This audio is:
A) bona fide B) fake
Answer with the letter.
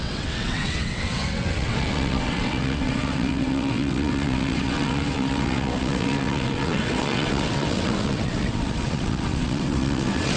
B